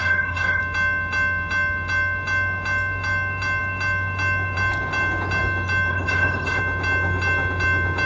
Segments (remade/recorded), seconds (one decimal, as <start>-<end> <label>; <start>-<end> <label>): 0.0-0.6 remade; 0.6-5.9 recorded; 5.9-6.6 remade; 6.6-8.1 recorded

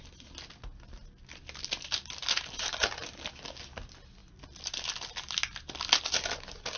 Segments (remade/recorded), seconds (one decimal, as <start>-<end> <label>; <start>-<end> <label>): 0.0-6.8 recorded

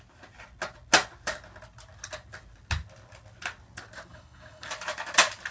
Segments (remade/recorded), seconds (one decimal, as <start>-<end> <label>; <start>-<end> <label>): 0.0-4.1 recorded; 4.1-4.7 remade; 4.7-5.5 recorded

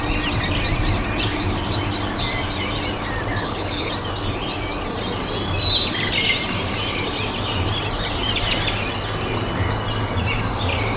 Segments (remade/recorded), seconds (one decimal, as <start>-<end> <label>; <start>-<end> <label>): 0.0-3.4 recorded; 3.4-3.9 remade; 3.9-11.0 recorded

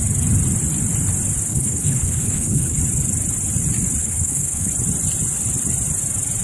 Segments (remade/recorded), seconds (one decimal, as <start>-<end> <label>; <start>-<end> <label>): 0.0-1.5 recorded; 1.5-2.8 remade; 2.8-4.0 recorded; 4.0-4.7 remade; 4.7-6.4 recorded

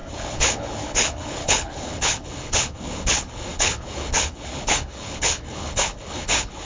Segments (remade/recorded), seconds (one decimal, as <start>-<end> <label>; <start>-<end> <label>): 0.0-6.7 remade

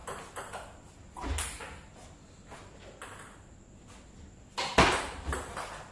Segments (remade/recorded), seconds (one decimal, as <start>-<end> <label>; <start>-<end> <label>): 0.0-5.9 recorded

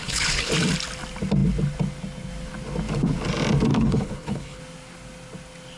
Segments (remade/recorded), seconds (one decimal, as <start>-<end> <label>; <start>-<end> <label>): 0.0-0.5 remade; 0.5-3.7 recorded; 3.7-4.6 remade; 4.6-5.8 recorded